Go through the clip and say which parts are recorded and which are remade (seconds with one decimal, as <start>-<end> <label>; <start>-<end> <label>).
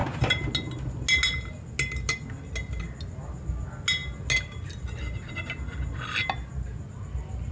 0.0-7.5 recorded